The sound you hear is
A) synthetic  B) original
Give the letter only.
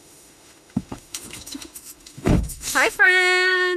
A